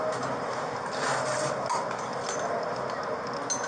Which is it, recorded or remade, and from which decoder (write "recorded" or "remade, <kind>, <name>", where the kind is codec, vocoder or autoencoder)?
recorded